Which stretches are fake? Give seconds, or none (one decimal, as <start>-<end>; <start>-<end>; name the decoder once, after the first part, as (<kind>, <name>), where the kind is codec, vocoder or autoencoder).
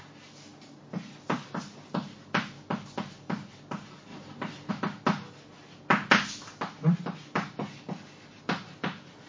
4.1-4.7 (vocoder, BigVGAN v2)